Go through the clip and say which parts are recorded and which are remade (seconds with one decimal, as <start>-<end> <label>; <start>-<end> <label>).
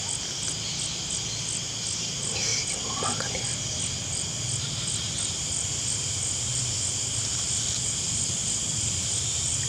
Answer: 0.0-2.5 recorded; 2.5-6.6 remade; 6.6-8.4 recorded; 8.4-9.7 remade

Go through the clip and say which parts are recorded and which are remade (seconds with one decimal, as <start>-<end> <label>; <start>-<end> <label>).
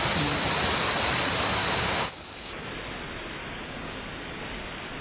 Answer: 0.0-1.6 recorded; 1.6-2.7 remade; 2.7-3.4 recorded; 3.4-4.4 remade; 4.4-5.0 recorded